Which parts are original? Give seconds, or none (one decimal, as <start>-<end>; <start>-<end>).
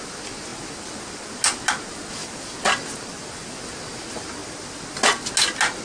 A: 0.0-5.8